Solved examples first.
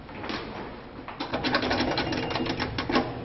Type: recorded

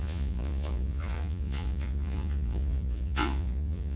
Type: remade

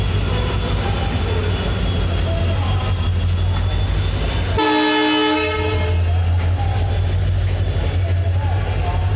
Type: recorded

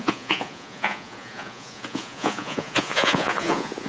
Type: remade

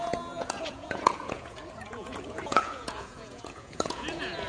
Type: remade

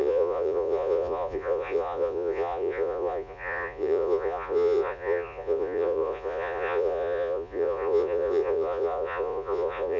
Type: remade